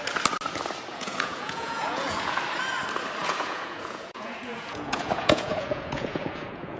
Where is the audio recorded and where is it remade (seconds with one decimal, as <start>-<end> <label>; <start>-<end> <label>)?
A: 0.0-0.9 recorded; 0.9-2.4 remade; 2.4-3.2 recorded; 3.2-6.8 remade